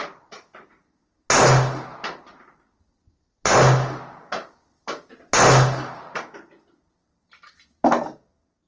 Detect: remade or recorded recorded